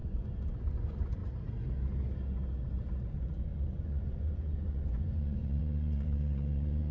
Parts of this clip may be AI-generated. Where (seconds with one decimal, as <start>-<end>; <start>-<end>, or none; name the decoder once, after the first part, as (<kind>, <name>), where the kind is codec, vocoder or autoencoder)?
0.0-1.2 (vocoder, Vocos); 3.1-6.9